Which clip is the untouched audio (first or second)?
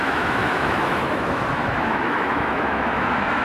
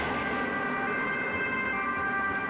second